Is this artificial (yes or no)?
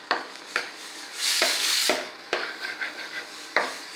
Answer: yes